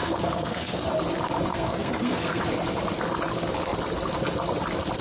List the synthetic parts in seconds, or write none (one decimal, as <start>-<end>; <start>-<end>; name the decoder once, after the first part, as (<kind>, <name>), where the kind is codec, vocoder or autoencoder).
0.0-0.9 (codec, SNAC); 1.5-2.4